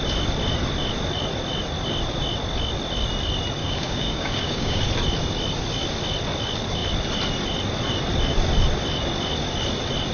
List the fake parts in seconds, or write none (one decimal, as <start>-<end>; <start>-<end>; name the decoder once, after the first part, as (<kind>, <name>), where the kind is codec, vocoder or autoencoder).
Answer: 3.6-4.9 (codec, DAC)